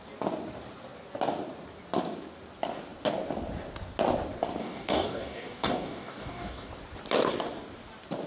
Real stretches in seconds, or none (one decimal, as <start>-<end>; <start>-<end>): 0.0-4.6; 6.7-8.3